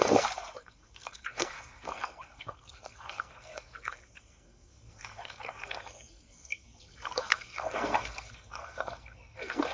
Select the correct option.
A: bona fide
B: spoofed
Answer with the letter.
B